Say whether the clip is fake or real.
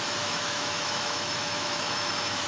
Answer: fake